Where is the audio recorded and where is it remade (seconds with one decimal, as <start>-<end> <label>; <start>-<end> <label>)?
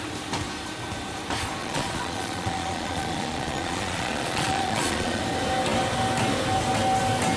0.0-1.6 recorded; 1.6-5.2 remade; 5.2-7.4 recorded